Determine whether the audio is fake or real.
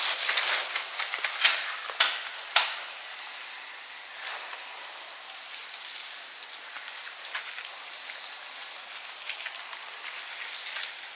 real